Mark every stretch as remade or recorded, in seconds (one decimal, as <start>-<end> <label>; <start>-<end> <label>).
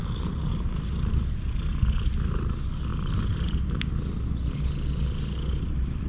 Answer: 0.0-1.7 remade; 1.7-2.9 recorded; 2.9-3.9 remade; 3.9-6.1 recorded